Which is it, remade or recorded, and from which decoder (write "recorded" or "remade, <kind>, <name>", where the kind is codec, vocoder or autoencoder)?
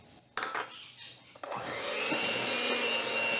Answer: recorded